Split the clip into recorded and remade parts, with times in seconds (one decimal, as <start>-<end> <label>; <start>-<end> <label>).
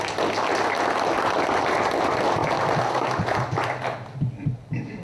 0.0-5.0 recorded